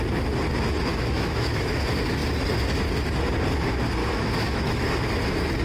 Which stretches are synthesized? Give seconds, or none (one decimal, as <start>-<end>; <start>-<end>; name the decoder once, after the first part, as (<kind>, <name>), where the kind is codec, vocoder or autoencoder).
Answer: 0.9-1.7 (autoencoder, DAC-VAE); 4.0-4.9